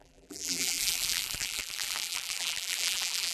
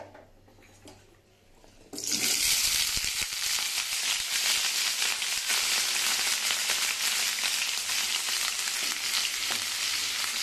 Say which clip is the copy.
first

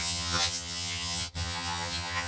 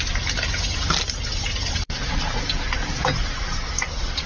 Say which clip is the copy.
first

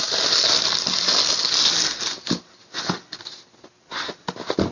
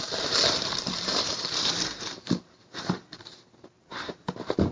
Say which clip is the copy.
second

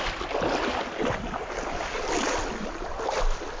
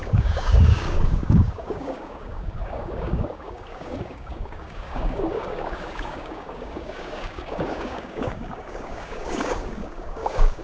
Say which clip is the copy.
second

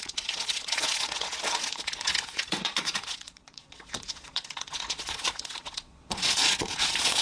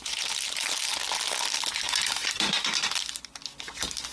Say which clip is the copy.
first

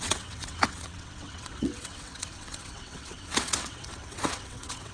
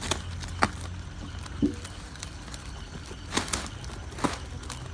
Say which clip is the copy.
first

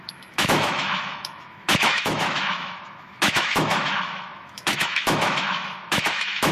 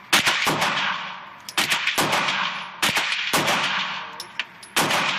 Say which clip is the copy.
first